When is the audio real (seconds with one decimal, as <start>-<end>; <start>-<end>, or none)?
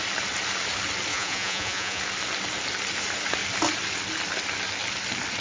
0.0-1.1; 2.0-5.4